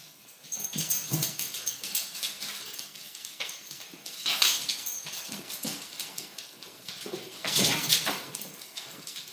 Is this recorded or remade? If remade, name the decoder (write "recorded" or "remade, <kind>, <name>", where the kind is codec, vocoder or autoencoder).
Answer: remade, codec, SNAC